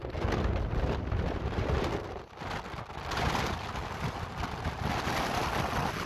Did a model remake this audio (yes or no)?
no